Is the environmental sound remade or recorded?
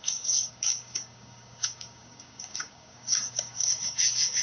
remade